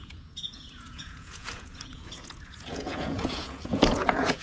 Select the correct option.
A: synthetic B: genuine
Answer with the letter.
A